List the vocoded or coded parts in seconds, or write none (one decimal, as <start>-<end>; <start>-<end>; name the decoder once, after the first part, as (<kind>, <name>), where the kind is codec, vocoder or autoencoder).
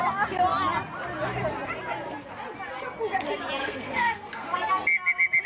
3.6-4.7 (codec, SNAC)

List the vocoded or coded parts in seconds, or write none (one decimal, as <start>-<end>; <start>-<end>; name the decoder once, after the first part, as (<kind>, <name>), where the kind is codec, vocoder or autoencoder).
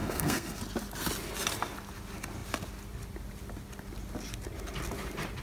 0.0-0.6 (codec, SNAC)